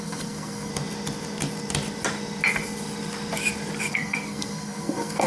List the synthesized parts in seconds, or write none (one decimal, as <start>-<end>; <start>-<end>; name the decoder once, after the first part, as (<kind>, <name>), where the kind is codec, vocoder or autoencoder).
0.0-0.7 (codec, SNAC); 3.9-5.3